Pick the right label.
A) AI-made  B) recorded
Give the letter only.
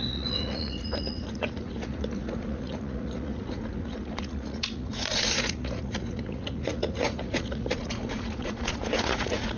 A